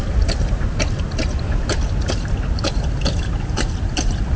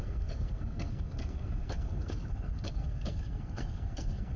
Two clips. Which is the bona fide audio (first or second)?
first